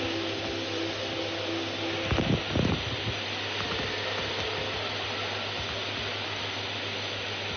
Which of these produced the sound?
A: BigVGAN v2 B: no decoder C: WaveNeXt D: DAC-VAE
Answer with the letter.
B